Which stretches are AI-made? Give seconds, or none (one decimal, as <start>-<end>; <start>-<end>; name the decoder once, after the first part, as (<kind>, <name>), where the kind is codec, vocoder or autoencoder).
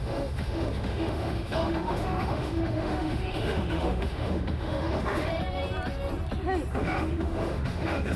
0.0-5.3 (autoencoder, DAC-VAE); 6.7-8.2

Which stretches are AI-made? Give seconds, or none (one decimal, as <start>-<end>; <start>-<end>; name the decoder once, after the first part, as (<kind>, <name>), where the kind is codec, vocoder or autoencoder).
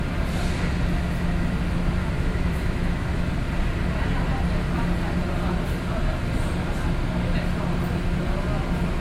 2.0-3.3 (autoencoder, DAC-VAE)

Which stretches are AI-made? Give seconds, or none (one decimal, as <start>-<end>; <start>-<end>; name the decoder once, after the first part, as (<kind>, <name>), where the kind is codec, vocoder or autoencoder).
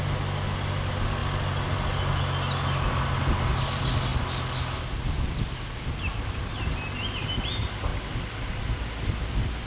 none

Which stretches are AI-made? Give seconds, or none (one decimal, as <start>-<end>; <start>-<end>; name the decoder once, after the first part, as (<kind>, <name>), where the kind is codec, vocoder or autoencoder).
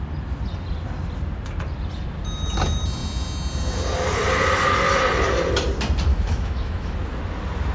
6.1-6.9 (autoencoder, DAC-VAE)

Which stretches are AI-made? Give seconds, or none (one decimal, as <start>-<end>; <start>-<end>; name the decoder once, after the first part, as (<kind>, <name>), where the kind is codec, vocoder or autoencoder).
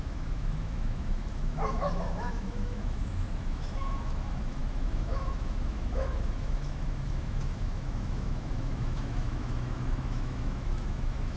0.0-11.4 (autoencoder, DAC-VAE)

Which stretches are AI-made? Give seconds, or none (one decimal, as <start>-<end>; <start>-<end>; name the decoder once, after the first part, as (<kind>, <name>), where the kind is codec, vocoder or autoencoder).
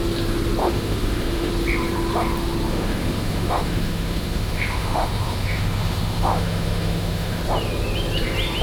0.6-1.5 (autoencoder, DAC-VAE); 2.7-7.4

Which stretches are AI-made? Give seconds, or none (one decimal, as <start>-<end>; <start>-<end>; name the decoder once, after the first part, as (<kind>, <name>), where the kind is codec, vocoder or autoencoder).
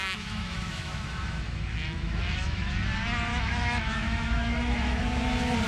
0.0-2.7 (autoencoder, DAC-VAE); 3.3-5.0